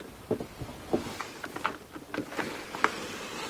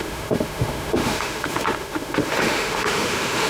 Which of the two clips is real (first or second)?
first